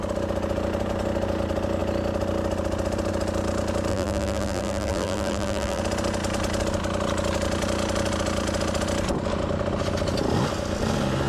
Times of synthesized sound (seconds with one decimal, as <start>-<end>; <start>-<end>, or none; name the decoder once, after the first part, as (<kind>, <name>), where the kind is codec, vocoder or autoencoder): 3.9-5.8 (vocoder, BigVGAN v2)